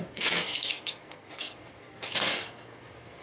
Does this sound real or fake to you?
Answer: fake